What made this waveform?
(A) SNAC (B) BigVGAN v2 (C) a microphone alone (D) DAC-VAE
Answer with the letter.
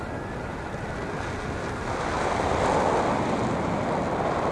C